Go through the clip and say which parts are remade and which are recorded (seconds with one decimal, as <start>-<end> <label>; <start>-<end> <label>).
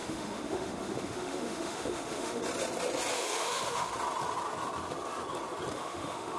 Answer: 0.0-2.4 remade; 2.4-3.1 recorded; 3.1-3.9 remade; 3.9-5.7 recorded; 5.7-6.4 remade